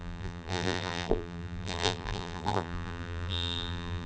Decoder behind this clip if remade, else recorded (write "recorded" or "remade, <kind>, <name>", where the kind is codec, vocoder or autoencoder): remade, vocoder, BigVGAN v2